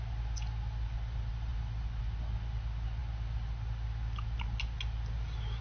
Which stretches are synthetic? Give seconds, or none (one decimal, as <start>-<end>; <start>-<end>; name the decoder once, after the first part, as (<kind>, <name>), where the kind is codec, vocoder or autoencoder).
none